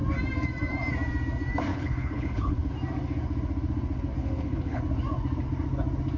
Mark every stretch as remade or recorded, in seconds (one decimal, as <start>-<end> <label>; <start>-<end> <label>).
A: 0.0-1.7 recorded; 1.7-2.7 remade; 2.7-4.2 recorded; 4.2-4.8 remade; 4.8-6.2 recorded